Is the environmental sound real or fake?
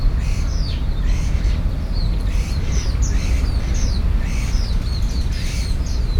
real